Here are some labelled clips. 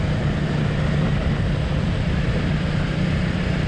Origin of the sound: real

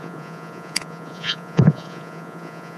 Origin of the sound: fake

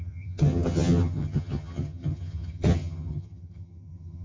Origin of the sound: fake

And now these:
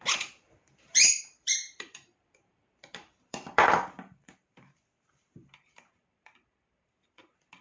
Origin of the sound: fake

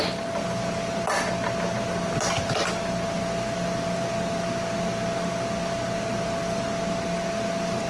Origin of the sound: real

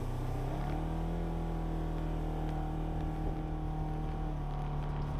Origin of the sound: real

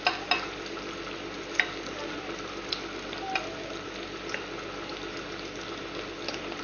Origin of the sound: real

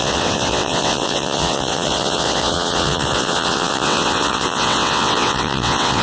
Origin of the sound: fake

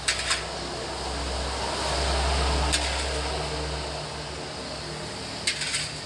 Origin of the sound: real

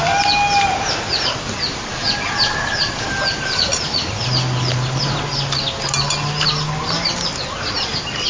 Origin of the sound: real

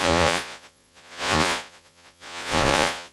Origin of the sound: fake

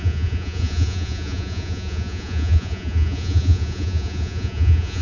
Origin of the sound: fake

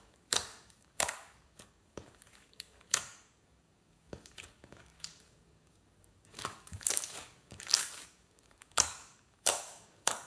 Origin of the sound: fake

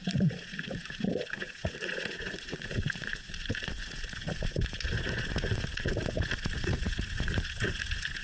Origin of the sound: fake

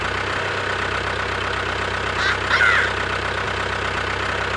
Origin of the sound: real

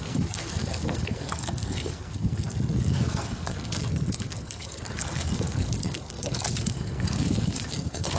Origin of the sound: fake